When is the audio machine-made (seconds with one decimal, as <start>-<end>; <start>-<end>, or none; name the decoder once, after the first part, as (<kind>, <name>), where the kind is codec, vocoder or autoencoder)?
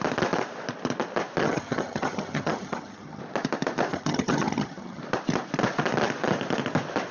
1.4-3.2 (vocoder, HiFi-GAN); 3.9-5.0